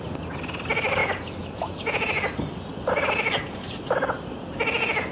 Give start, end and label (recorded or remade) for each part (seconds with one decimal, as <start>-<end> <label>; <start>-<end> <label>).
0.0-1.0 recorded; 1.0-2.3 remade; 2.3-5.1 recorded